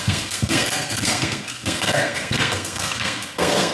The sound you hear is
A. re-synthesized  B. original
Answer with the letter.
A